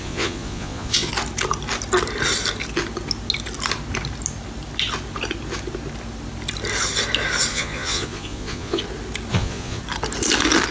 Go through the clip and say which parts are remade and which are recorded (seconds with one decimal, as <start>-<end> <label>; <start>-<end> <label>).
0.0-1.1 remade; 1.1-7.5 recorded; 7.5-8.8 remade; 8.8-9.3 recorded; 9.3-9.8 remade; 9.8-10.7 recorded